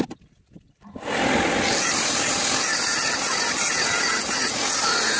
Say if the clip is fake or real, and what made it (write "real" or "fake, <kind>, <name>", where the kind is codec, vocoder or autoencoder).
real